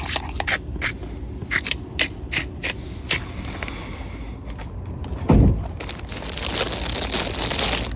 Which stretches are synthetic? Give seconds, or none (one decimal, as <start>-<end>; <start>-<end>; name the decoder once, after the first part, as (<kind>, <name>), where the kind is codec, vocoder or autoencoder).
none